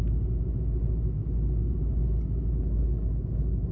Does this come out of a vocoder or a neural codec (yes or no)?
no